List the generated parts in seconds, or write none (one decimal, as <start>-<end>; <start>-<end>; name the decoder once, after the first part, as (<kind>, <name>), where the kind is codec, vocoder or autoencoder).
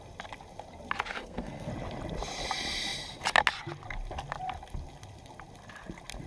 1.1-1.7 (codec, SNAC)